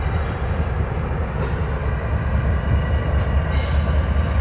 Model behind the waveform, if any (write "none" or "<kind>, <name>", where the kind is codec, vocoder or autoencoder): none